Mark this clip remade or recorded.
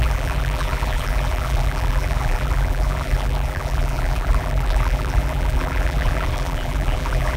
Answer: remade